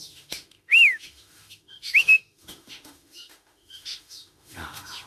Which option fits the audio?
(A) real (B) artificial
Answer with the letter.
B